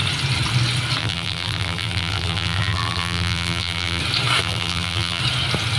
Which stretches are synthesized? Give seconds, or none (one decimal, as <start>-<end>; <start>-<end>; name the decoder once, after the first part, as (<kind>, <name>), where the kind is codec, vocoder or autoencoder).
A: 1.0-4.0 (vocoder, BigVGAN v2); 4.4-5.2